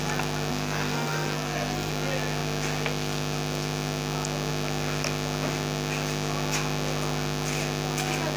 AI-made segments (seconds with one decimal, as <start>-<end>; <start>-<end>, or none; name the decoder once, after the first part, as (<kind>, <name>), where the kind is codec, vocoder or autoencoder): 0.5-1.9 (codec, SNAC)

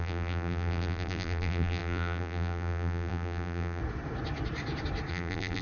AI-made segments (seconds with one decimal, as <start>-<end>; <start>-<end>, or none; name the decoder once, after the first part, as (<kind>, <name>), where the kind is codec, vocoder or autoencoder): 0.0-3.8 (vocoder, BigVGAN v2); 5.1-5.6

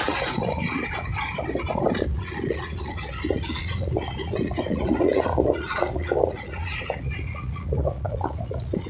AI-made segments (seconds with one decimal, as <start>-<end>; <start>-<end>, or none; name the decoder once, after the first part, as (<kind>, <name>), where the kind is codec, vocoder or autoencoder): 0.0-1.1 (vocoder, Vocos); 1.9-8.9

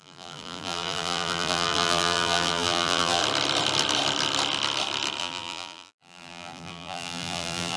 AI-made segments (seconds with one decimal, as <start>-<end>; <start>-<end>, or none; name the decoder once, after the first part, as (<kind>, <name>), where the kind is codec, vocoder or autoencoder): 0.0-3.2 (vocoder, BigVGAN v2); 5.2-7.8

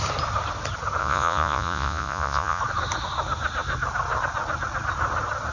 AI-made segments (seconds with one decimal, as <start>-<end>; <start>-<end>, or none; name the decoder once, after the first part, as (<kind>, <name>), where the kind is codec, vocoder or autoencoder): 1.0-2.6 (vocoder, Vocos)